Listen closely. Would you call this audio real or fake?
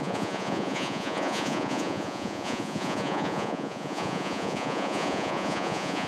fake